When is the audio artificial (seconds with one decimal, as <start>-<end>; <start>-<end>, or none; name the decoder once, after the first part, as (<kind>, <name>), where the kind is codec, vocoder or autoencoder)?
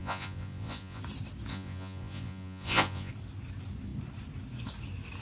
0.0-1.0 (vocoder, Vocos); 1.5-3.1